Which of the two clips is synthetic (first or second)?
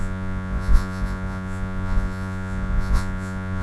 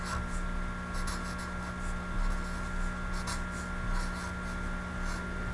first